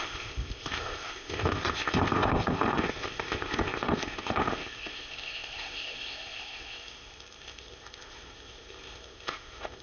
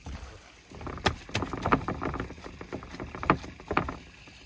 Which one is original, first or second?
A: second